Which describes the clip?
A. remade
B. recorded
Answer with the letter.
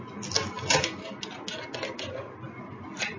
B